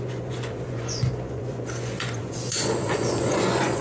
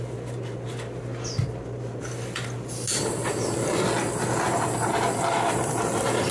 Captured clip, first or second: second